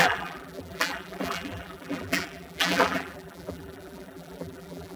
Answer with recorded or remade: remade